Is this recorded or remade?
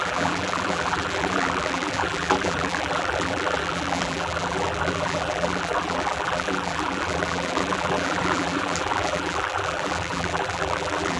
remade